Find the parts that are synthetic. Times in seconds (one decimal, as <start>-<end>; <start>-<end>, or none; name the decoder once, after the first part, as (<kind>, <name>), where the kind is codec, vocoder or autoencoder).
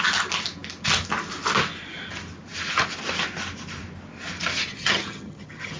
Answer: 4.7-5.8 (vocoder, HiFi-GAN)